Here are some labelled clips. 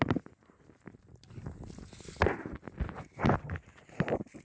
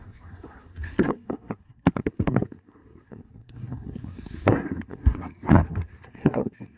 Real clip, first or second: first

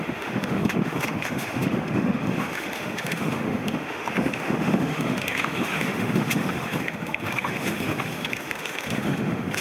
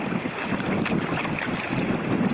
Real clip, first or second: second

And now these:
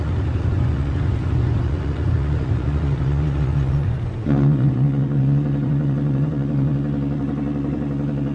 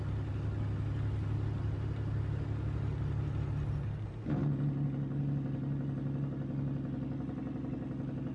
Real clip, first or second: second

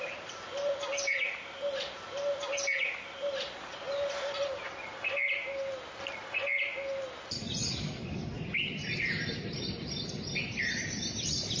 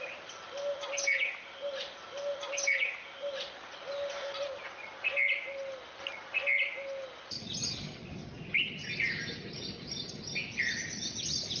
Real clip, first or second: second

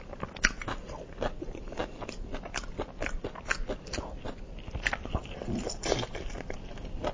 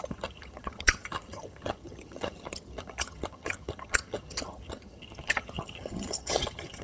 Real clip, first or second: first